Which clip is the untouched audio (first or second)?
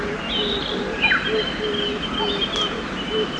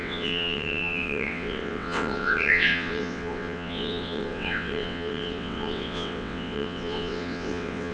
first